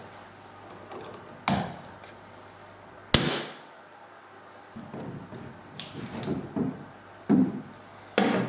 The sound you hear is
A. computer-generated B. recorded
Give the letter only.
B